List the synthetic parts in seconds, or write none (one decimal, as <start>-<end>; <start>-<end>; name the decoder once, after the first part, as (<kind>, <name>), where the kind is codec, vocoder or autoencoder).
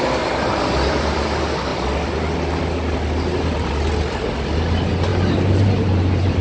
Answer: 5.1-6.4 (vocoder, BigVGAN v2)